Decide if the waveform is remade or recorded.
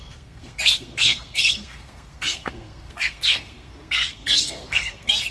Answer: remade